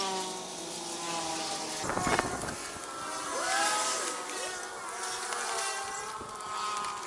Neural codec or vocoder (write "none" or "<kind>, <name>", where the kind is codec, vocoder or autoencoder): none